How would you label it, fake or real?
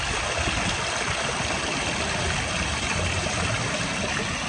real